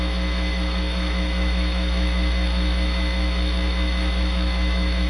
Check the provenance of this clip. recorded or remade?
remade